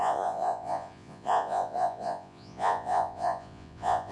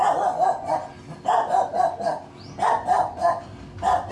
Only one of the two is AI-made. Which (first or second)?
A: first